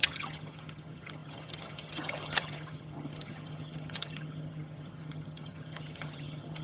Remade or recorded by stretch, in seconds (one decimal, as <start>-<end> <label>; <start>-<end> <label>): 0.0-6.6 remade